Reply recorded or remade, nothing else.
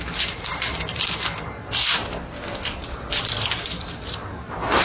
remade